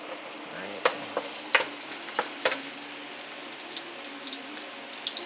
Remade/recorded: recorded